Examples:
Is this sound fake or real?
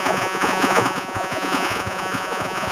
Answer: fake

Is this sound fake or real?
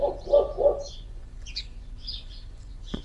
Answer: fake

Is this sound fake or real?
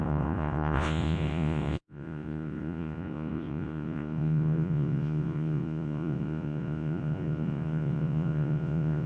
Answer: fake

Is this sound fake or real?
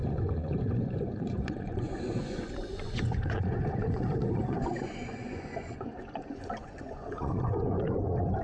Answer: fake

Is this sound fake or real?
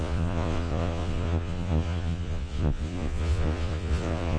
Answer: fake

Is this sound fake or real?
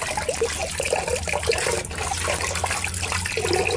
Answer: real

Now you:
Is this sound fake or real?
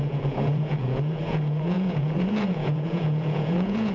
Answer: fake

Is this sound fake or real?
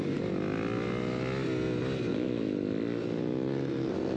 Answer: real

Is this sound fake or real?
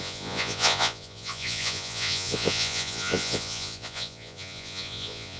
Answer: fake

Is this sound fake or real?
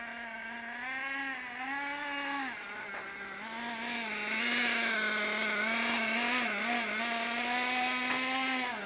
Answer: real